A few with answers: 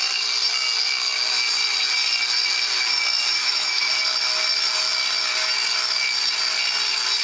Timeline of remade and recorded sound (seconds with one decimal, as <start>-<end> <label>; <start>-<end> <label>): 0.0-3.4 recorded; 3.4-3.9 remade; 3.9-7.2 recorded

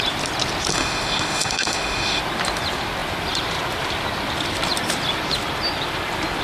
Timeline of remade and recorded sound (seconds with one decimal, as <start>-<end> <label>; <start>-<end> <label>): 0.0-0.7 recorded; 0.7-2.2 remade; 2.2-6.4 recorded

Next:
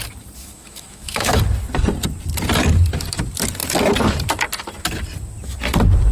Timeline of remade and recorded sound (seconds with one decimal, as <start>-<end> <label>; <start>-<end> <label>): 0.0-0.4 recorded; 0.4-1.4 remade; 1.4-6.1 recorded

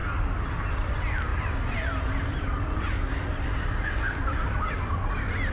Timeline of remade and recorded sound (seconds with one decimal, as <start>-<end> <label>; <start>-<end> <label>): 0.0-5.5 recorded